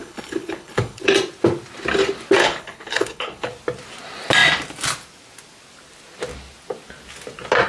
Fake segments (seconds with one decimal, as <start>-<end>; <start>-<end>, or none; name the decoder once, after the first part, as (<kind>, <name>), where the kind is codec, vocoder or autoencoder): 0.0-1.0 (codec, HILCodec); 2.4-3.5